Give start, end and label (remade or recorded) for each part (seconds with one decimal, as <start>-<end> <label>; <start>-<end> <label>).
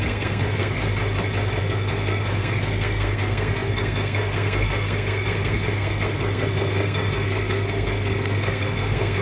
0.0-0.8 remade; 0.8-1.6 recorded; 1.6-9.2 remade